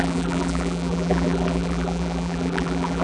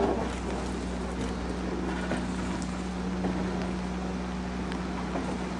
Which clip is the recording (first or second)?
second